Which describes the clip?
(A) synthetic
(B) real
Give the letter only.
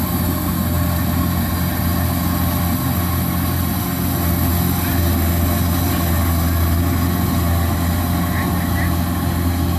B